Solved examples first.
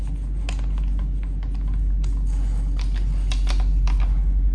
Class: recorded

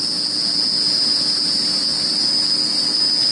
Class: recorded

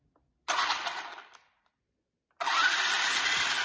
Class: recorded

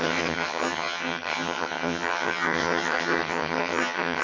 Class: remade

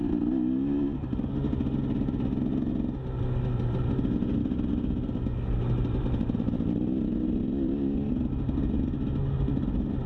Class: recorded